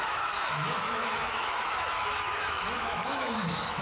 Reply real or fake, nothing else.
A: fake